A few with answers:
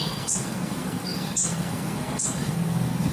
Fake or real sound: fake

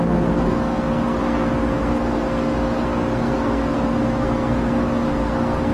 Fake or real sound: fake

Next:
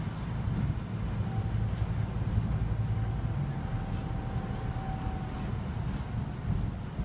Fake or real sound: real